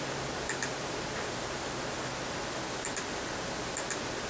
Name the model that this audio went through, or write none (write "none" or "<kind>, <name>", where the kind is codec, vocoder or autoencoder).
none